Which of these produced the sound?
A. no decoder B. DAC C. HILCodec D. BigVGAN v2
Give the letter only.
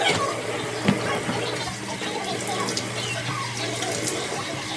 A